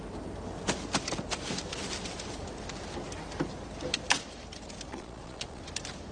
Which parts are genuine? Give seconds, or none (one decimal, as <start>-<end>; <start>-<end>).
0.0-4.9; 5.6-6.1